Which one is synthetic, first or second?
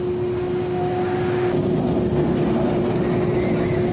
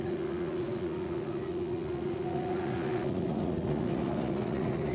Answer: second